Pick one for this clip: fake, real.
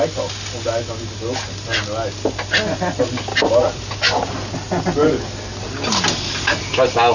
real